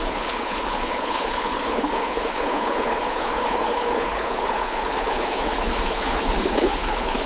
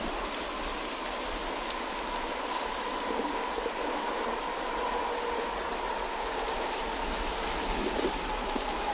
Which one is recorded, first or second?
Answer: second